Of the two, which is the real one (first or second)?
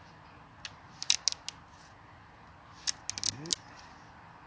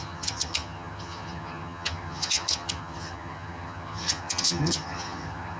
first